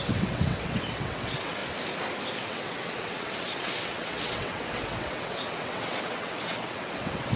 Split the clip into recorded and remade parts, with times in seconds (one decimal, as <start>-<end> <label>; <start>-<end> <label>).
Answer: 0.0-1.6 remade; 1.6-2.4 recorded; 2.4-7.4 remade